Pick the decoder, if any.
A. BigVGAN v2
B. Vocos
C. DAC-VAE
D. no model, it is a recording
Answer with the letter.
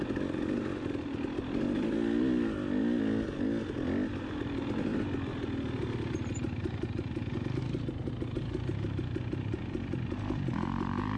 D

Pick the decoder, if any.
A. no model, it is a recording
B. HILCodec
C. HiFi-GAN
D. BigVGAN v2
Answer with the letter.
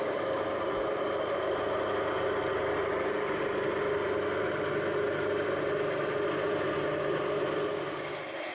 A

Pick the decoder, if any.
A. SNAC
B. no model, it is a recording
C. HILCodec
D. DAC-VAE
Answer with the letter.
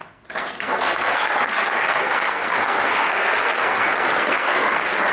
A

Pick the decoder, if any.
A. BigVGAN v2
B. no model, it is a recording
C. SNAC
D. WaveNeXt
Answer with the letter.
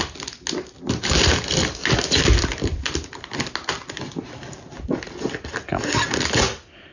B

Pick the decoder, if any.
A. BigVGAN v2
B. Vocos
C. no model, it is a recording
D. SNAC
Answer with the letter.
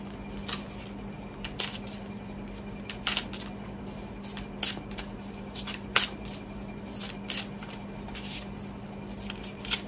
C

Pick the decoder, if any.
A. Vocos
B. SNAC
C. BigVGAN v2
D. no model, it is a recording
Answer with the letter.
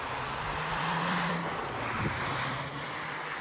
C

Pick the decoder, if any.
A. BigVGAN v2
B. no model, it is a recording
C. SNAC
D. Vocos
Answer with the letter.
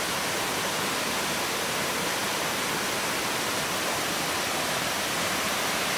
A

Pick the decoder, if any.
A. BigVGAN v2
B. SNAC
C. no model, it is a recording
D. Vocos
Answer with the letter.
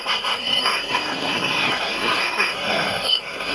B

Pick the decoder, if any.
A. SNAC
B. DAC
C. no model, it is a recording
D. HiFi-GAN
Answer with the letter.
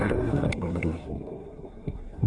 A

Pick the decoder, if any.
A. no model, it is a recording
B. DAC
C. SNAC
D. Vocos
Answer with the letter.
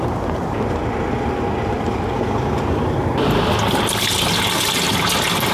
A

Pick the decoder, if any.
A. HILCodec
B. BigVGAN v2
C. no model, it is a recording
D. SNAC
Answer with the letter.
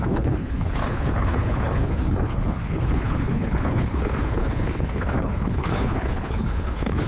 A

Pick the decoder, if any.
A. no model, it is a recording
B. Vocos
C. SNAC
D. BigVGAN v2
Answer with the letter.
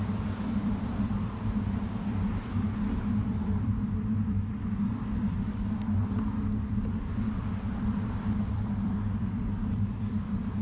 D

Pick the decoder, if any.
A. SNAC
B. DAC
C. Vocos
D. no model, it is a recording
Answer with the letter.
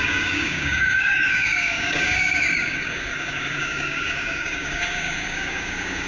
B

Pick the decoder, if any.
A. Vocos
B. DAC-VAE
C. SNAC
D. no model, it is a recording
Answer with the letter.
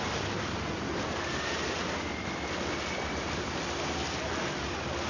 D